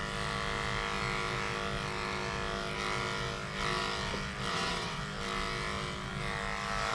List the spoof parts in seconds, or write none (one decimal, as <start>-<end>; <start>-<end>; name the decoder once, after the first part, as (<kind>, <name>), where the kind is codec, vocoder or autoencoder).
4.5-5.0 (vocoder, WaveNeXt)